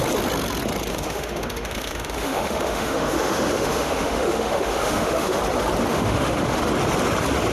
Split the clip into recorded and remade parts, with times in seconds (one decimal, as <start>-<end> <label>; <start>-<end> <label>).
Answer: 0.0-0.9 recorded; 0.9-5.4 remade; 5.4-5.9 recorded; 5.9-6.7 remade; 6.7-7.5 recorded